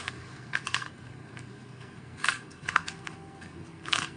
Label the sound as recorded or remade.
remade